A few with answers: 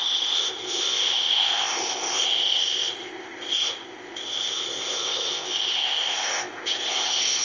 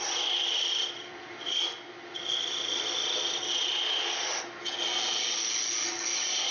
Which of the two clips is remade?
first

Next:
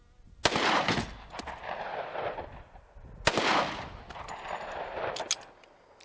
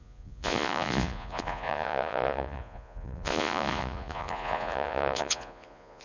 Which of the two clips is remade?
second